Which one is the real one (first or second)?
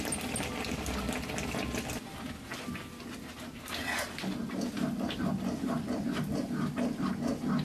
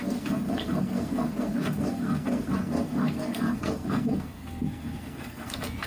first